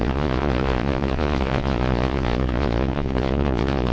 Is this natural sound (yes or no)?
no